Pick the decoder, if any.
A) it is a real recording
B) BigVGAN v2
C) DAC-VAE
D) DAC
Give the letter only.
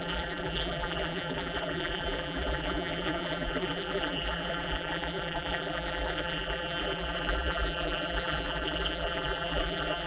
B